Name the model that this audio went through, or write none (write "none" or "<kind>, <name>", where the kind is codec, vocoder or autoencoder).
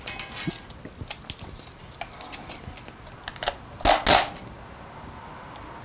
none